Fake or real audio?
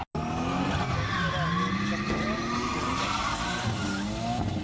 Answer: real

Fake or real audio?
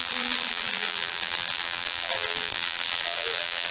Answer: fake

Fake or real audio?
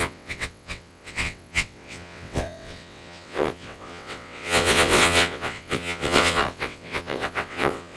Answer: fake